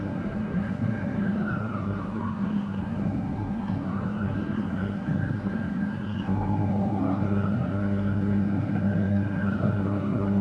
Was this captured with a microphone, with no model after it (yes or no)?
no